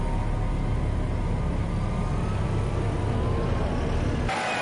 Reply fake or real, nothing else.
real